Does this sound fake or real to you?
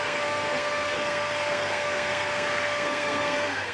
fake